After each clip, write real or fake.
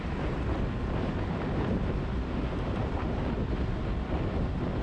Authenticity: real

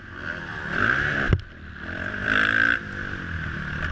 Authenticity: real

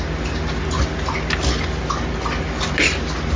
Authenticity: real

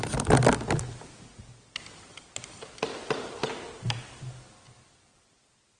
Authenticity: real